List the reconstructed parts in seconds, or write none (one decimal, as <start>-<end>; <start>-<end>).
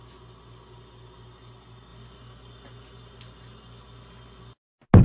none